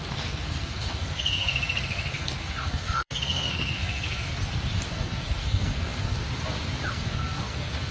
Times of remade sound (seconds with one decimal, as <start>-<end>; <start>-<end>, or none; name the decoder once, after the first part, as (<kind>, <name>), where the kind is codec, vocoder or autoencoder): 0.0-4.3 (codec, SNAC); 4.9-6.2; 6.9-7.9

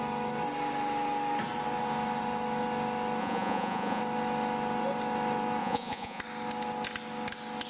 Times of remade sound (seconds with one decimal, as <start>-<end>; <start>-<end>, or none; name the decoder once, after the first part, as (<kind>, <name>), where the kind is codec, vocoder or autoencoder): 3.2-4.0 (vocoder, Vocos); 5.6-6.2

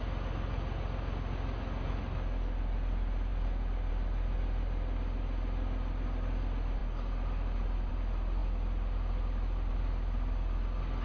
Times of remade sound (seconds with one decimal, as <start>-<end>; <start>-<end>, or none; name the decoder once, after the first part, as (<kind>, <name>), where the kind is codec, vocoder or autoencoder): none

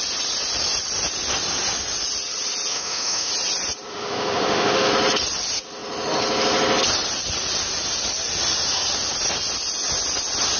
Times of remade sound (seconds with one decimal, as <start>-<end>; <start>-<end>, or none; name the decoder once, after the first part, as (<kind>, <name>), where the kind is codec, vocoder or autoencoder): 2.7-3.3 (autoencoder, DAC-VAE); 3.9-4.9

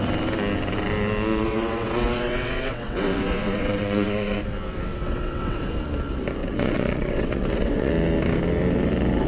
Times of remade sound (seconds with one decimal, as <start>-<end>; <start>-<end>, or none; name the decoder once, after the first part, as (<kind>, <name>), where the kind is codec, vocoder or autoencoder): 1.4-4.4 (vocoder, WaveNeXt); 4.9-5.7; 6.4-7.9

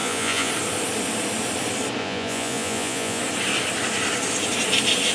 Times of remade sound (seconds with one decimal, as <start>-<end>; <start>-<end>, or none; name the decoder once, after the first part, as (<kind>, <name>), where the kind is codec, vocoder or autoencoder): 0.0-0.5 (vocoder, Vocos); 2.0-3.2

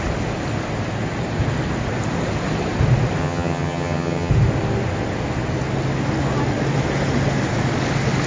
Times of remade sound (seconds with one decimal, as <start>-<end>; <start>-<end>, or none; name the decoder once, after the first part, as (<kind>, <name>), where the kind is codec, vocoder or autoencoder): 3.2-4.3 (vocoder, HiFi-GAN)

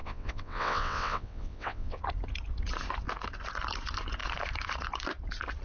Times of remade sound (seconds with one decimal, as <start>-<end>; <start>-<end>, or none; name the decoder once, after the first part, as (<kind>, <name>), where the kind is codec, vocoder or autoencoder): 0.0-2.0 (vocoder, WaveNeXt)